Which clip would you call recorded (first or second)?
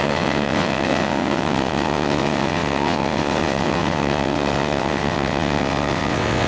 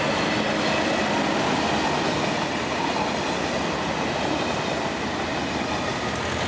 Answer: second